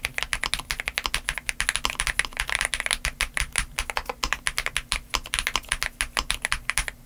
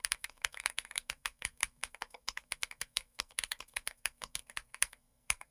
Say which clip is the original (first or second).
first